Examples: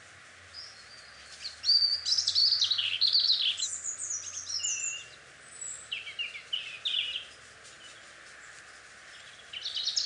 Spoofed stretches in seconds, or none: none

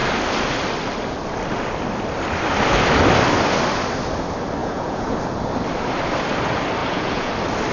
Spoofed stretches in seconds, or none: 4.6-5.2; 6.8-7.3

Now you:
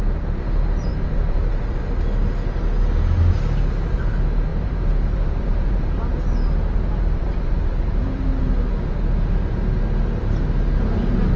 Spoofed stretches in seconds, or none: 4.5-8.4